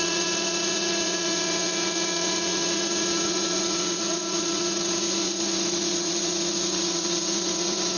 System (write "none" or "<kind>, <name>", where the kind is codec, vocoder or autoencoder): vocoder, Vocos